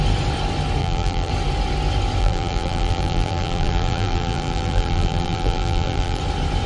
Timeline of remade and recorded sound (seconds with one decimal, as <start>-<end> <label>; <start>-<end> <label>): 0.0-0.8 recorded; 0.8-1.3 remade; 1.3-2.2 recorded; 2.2-6.2 remade; 6.2-6.7 recorded